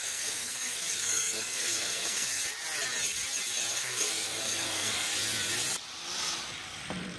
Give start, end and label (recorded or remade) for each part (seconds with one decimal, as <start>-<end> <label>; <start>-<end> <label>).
0.0-2.4 remade; 2.4-3.7 recorded; 3.7-5.1 remade; 5.1-7.2 recorded